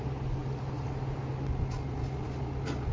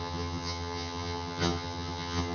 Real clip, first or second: first